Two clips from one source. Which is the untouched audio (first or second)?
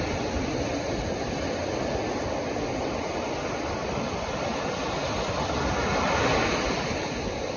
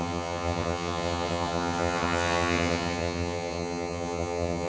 first